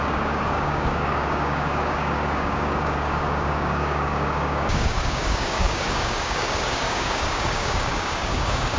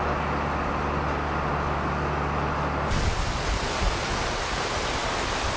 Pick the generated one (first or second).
first